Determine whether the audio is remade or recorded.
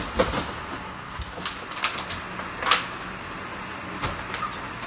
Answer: recorded